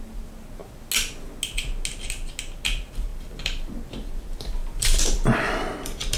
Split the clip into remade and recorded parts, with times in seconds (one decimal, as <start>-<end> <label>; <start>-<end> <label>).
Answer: 0.0-3.1 recorded; 3.1-3.7 remade; 3.7-4.6 recorded; 4.6-6.2 remade